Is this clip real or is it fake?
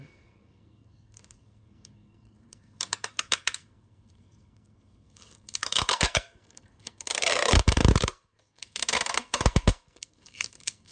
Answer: fake